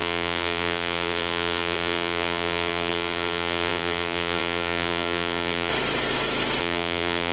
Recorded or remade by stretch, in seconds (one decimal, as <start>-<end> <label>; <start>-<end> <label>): 0.0-5.7 remade; 5.7-6.6 recorded; 6.6-7.3 remade